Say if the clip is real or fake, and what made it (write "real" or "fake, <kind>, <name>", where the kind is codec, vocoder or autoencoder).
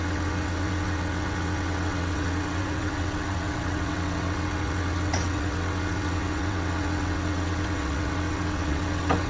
fake, vocoder, WaveNeXt